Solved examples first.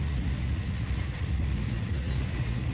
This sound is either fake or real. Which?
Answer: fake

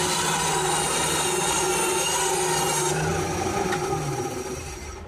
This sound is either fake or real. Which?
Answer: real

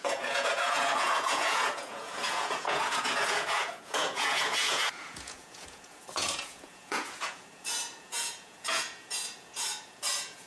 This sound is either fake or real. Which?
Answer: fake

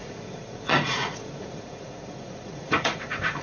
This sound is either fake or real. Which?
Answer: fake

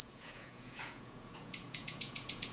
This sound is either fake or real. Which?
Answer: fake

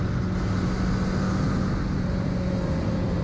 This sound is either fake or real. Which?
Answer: real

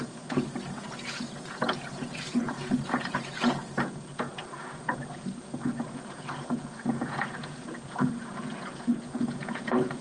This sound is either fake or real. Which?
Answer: fake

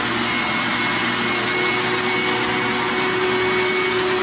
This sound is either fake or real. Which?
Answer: real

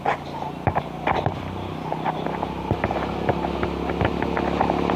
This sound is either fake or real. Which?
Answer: real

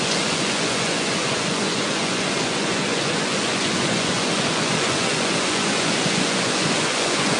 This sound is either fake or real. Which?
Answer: fake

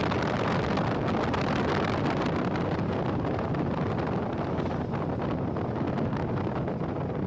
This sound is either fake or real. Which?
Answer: real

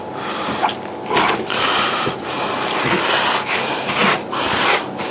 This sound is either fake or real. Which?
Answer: real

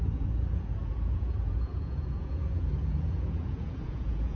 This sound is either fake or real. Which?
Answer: fake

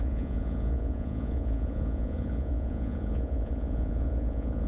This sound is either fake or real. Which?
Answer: fake